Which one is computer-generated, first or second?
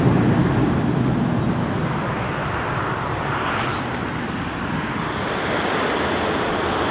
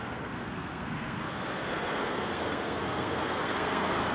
second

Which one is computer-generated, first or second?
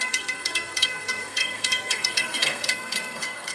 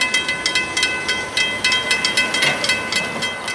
first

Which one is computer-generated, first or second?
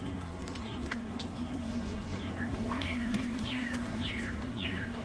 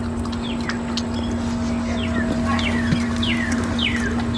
first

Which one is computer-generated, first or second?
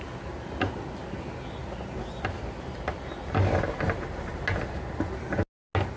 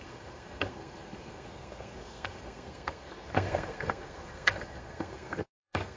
second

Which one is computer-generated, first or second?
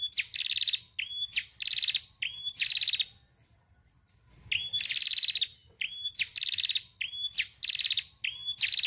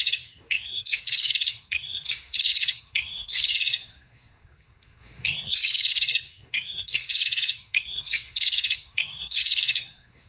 second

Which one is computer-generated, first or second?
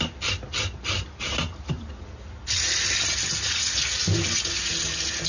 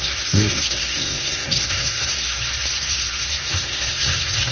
second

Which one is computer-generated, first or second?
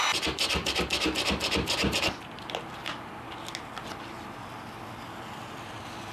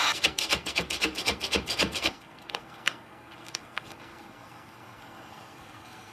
second